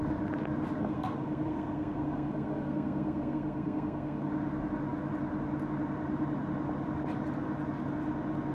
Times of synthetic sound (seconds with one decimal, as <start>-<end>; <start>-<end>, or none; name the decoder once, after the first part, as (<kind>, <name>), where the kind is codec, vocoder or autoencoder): 0.8-4.3 (codec, SNAC)